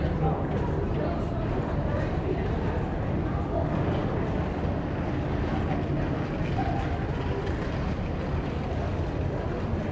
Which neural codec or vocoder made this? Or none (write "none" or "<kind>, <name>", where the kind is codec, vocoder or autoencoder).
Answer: none